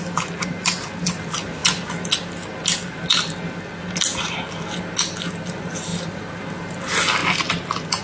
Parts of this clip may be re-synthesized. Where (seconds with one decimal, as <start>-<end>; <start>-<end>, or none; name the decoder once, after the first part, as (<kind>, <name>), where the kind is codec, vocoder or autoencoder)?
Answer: 5.9-6.5 (vocoder, BigVGAN v2)